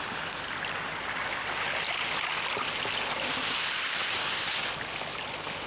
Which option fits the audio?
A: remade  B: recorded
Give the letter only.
B